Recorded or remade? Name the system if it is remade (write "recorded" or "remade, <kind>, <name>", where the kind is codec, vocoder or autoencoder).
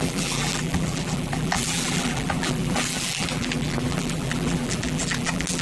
remade, vocoder, BigVGAN v2